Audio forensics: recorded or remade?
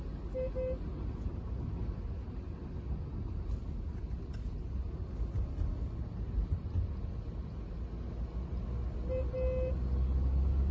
recorded